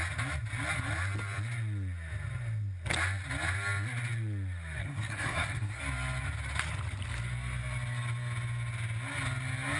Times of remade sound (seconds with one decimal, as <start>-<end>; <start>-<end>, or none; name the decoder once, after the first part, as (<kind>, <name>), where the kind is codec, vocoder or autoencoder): 4.8-5.8 (codec, SNAC)